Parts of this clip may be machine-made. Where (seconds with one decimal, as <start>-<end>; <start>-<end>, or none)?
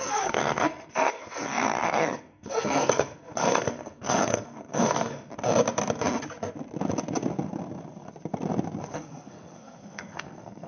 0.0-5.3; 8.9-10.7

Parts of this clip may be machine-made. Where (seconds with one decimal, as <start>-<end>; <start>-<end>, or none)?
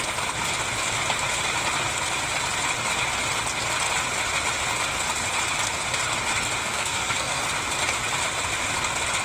6.6-7.4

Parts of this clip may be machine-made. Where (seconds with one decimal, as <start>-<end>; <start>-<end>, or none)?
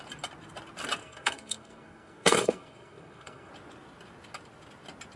1.0-3.5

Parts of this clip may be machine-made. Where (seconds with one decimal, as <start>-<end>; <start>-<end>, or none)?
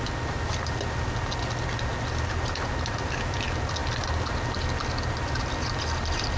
none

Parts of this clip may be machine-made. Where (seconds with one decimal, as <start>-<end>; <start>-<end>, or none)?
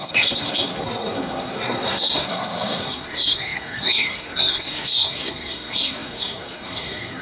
0.0-7.2